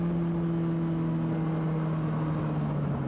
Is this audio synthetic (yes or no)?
no